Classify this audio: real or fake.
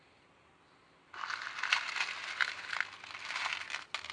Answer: real